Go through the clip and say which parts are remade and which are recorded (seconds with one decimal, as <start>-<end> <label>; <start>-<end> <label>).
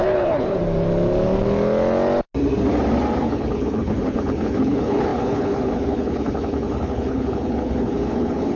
0.0-0.6 remade; 0.6-3.2 recorded; 3.2-8.6 remade